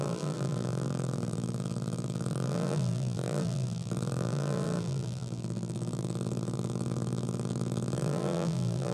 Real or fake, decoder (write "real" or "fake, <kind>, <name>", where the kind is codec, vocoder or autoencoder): fake, vocoder, BigVGAN v2